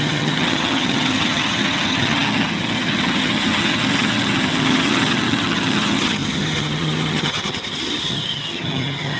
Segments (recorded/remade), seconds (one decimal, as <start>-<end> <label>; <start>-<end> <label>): 0.0-9.2 remade